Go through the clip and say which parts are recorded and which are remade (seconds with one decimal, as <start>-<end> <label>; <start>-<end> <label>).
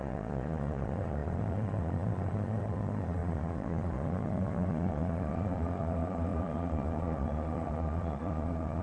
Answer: 0.0-8.8 remade